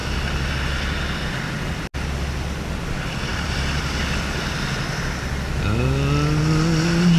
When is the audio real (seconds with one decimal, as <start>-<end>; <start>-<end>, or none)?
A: 0.0-3.3; 4.0-7.2